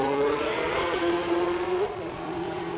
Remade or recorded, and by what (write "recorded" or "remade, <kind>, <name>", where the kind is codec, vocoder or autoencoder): remade, vocoder, Vocos